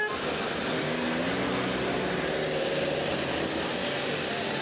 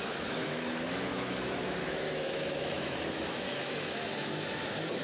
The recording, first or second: first